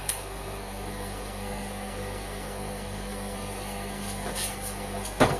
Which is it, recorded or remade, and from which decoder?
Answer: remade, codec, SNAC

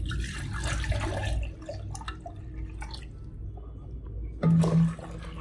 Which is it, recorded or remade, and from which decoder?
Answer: recorded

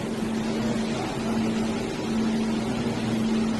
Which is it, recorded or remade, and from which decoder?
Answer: recorded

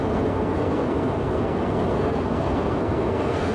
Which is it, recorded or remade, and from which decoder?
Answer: remade, codec, SNAC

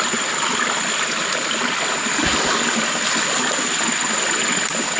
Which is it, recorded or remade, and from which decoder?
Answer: recorded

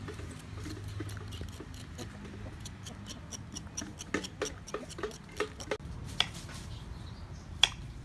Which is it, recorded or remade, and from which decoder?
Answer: recorded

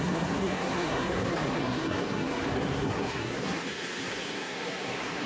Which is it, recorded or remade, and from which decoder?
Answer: remade, codec, SNAC